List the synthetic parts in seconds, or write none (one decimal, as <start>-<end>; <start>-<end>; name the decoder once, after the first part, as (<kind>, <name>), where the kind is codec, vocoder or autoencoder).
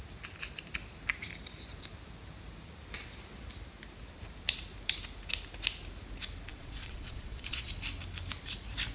6.5-7.7 (vocoder, Vocos)